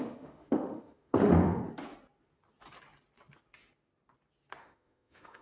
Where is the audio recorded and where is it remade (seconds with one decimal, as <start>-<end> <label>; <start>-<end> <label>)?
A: 0.0-1.6 remade; 1.6-4.6 recorded; 4.6-5.4 remade